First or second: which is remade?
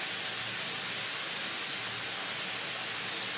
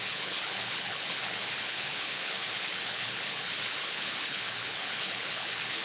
second